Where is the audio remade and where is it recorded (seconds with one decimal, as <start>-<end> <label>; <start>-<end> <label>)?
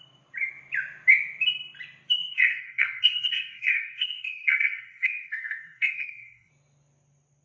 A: 0.0-2.2 recorded; 2.2-6.5 remade; 6.5-7.4 recorded